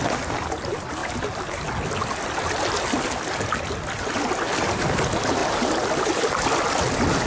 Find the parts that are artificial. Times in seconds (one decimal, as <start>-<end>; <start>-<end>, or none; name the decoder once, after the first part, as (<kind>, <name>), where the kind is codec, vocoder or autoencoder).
1.0-1.6 (vocoder, BigVGAN v2); 5.4-6.8